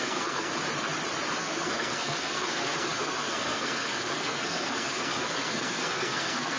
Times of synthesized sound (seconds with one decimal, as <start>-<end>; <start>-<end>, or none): 0.0-0.5; 1.4-6.6